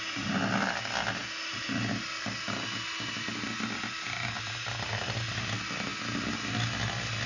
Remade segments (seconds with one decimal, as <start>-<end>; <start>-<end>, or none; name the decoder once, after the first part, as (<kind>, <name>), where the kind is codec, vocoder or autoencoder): none